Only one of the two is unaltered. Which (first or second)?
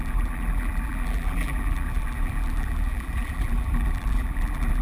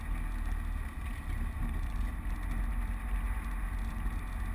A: second